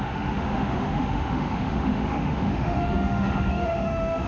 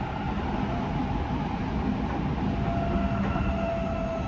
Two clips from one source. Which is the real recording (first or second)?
second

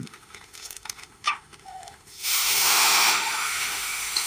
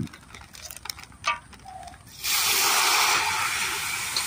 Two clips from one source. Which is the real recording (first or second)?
second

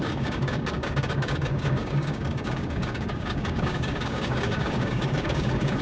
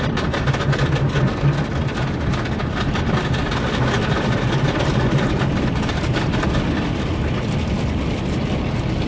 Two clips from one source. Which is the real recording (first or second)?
second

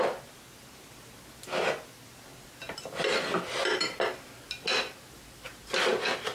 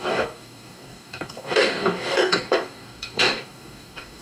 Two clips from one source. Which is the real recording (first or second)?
first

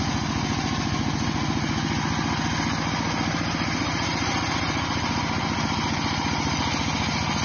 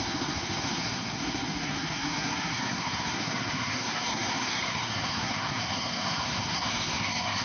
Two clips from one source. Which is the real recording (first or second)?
first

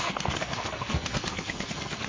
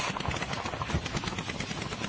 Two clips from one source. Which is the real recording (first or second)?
second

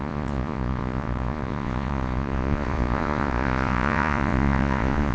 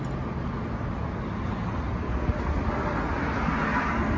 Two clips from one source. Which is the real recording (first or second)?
second